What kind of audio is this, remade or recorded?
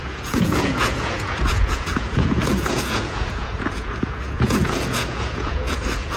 remade